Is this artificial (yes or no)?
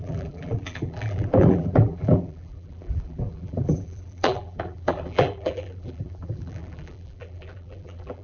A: yes